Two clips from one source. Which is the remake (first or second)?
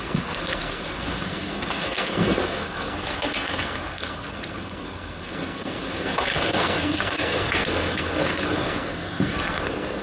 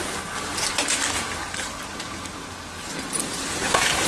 first